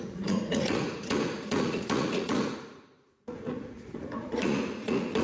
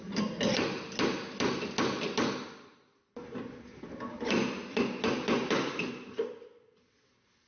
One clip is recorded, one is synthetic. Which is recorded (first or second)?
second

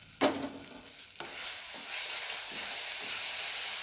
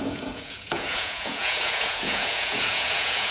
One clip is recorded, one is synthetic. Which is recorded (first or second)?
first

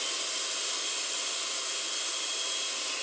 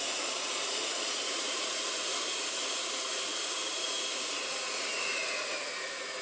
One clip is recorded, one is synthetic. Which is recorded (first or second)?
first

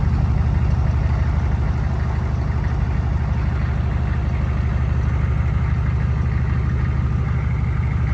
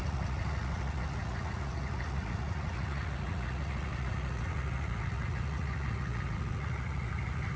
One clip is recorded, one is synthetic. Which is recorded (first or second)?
first